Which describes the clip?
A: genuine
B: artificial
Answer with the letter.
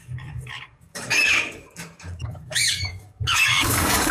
B